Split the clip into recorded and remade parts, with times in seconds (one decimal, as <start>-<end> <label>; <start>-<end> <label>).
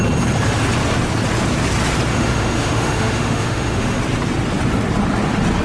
0.0-2.1 recorded; 2.1-4.0 remade; 4.0-5.6 recorded